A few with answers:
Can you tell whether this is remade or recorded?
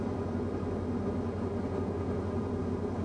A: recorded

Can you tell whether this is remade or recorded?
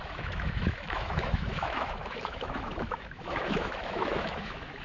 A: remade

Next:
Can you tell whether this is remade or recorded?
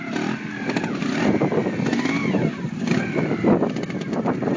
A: recorded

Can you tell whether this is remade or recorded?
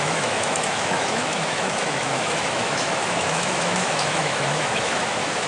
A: remade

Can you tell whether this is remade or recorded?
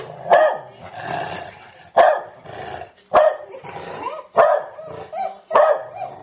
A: recorded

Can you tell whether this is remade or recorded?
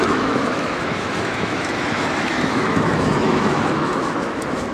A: remade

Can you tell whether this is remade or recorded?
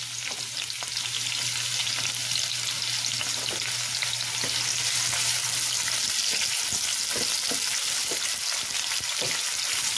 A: recorded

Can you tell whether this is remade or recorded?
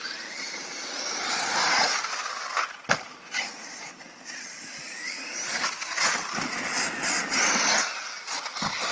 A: recorded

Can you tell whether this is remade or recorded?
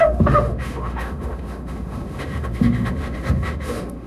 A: remade